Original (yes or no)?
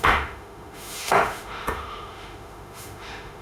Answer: no